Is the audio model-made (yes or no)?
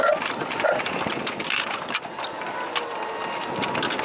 no